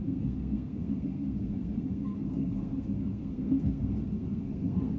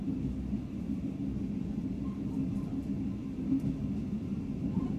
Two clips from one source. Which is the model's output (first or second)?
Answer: first